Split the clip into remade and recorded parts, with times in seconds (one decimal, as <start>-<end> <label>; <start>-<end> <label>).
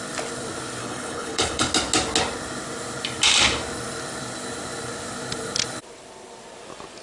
0.0-0.8 recorded; 0.8-1.7 remade; 1.7-7.0 recorded